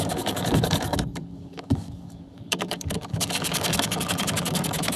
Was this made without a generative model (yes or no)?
no